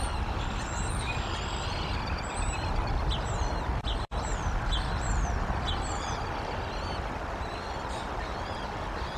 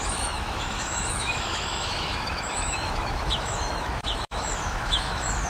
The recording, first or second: first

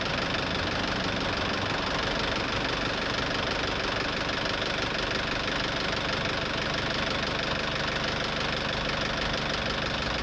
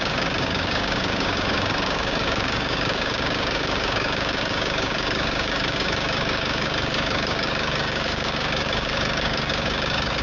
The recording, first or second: first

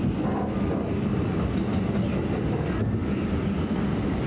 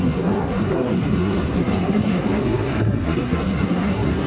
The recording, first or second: first